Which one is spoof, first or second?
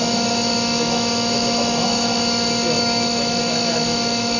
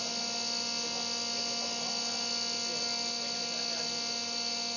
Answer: first